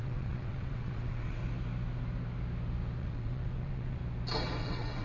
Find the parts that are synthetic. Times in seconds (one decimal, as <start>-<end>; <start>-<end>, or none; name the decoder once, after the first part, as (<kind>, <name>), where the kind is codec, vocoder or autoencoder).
0.0-1.4 (vocoder, WaveNeXt); 3.0-4.0; 4.6-5.0